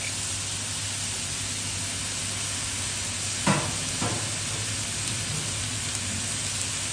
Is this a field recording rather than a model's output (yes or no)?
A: yes